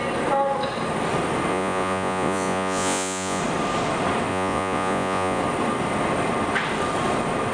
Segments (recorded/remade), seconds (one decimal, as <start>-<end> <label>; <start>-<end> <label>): 0.0-1.5 recorded; 1.5-3.4 remade; 3.4-4.3 recorded; 4.3-5.4 remade; 5.4-7.5 recorded